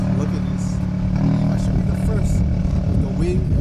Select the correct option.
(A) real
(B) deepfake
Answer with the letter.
A